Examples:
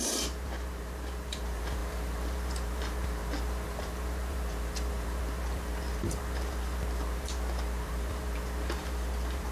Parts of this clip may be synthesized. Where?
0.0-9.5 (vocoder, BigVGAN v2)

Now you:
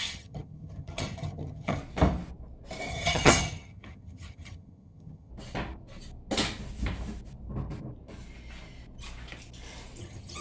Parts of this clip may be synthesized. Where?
0.0-1.8 (vocoder, HiFi-GAN); 2.9-5.3; 10.0-10.4

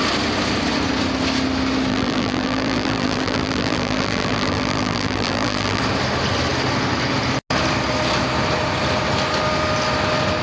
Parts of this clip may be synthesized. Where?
1.9-5.8 (vocoder, BigVGAN v2)

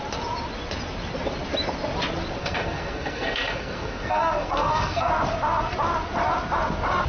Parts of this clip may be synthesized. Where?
2.4-5.1 (codec, SNAC)